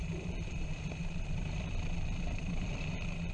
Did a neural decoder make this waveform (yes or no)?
yes